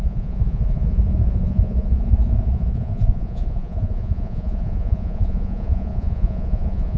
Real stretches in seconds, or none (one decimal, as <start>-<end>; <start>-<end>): none